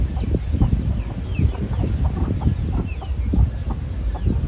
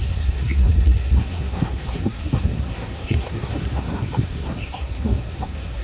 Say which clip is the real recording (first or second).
first